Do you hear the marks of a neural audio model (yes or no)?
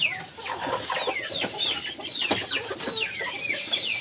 no